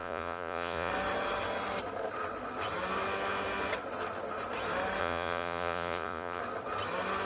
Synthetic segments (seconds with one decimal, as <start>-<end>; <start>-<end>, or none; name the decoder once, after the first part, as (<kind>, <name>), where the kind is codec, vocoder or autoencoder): 0.0-0.9 (vocoder, Vocos); 5.0-6.4